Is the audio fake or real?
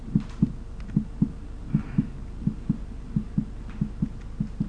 real